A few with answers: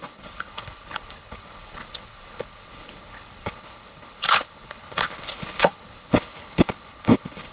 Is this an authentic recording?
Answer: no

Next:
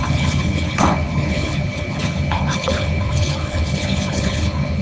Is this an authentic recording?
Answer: no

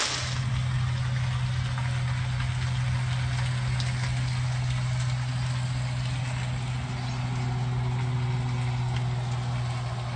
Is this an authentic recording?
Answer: yes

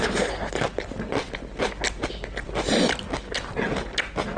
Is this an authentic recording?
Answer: yes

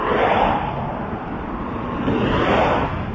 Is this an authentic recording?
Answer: yes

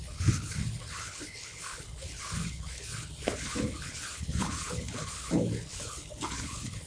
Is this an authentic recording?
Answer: no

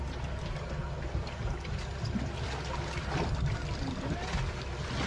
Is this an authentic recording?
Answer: yes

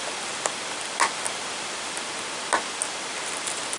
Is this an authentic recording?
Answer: yes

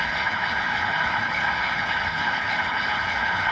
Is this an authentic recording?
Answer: no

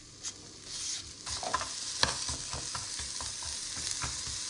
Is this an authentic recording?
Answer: yes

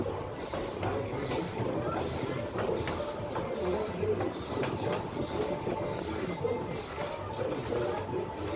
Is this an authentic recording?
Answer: yes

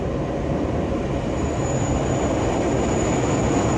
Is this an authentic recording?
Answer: yes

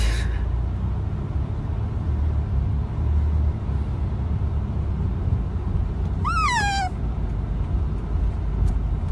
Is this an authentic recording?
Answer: yes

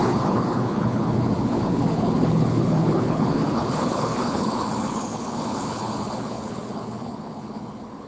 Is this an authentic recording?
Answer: no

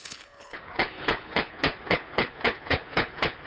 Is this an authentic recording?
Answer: no